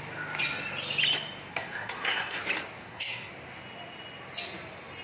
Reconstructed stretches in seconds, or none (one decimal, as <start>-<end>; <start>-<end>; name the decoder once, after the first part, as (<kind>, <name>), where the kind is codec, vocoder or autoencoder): 1.5-2.4 (codec, SNAC); 2.8-3.3